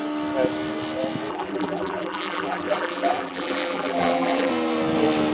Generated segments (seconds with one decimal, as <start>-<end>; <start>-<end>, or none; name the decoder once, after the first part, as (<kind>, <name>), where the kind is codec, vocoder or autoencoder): 1.3-4.5 (vocoder, BigVGAN v2)